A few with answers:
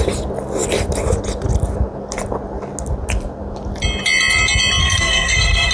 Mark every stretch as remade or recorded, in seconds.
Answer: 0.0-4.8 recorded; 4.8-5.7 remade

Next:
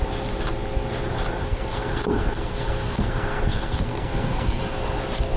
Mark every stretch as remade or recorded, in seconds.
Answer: 0.0-1.4 recorded; 1.4-4.6 remade; 4.6-5.4 recorded

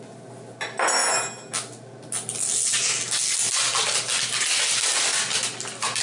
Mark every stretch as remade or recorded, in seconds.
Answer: 0.0-6.0 recorded